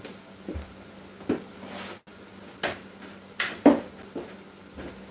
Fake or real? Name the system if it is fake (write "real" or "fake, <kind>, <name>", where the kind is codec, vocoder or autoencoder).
real